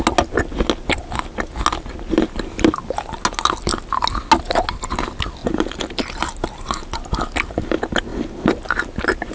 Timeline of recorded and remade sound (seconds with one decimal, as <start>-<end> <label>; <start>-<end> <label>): 0.0-9.3 recorded